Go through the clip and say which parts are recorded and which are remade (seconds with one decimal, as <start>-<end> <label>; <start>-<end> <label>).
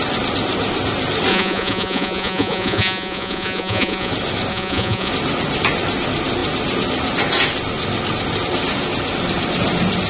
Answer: 0.0-1.3 recorded; 1.3-4.1 remade; 4.1-4.5 recorded; 4.5-5.1 remade; 5.1-10.1 recorded